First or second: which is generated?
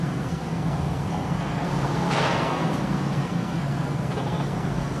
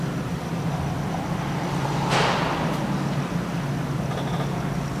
first